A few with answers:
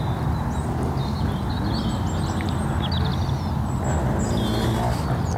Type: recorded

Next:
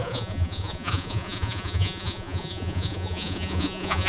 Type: remade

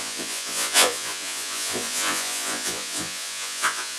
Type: remade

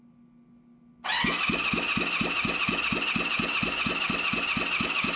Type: recorded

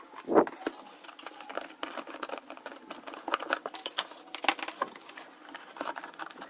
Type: recorded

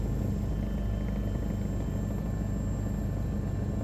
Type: recorded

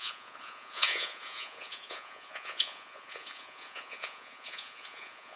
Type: remade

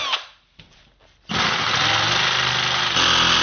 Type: recorded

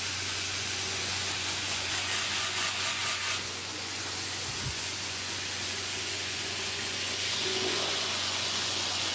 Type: remade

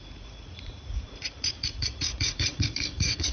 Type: remade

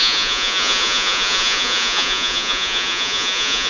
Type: remade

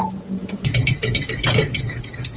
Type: remade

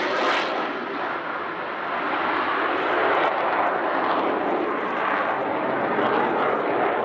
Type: recorded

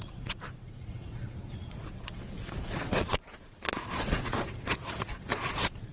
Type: remade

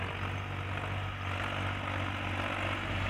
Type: recorded